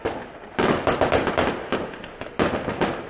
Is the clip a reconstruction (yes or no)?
no